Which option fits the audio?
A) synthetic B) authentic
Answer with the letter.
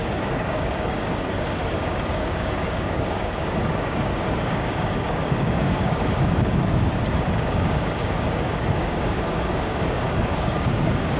A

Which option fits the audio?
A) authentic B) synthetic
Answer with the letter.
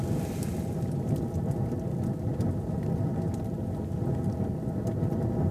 A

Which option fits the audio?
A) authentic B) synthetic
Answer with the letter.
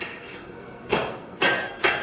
B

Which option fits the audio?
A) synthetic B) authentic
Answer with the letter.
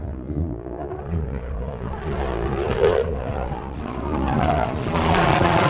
A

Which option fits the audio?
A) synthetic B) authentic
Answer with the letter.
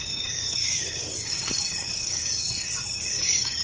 A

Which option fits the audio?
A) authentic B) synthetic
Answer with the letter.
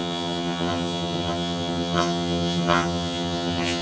B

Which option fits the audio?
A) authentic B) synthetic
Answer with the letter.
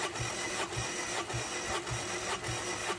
A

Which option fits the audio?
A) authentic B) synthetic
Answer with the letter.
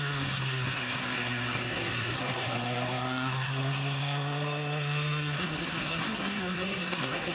B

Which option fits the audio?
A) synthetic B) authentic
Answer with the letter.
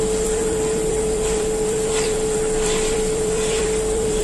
A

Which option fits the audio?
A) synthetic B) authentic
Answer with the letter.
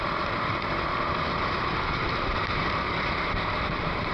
A